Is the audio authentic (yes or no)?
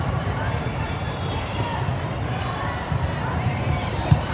no